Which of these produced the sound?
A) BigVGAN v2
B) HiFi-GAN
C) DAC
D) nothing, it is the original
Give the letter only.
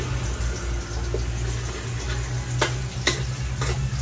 D